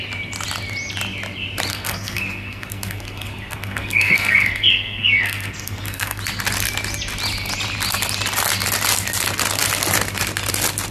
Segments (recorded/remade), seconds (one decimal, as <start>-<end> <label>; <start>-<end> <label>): 0.0-1.7 recorded; 1.7-6.2 remade; 6.2-10.9 recorded